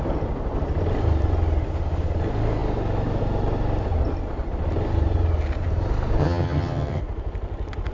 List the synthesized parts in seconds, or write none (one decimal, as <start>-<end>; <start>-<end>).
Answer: 6.2-7.0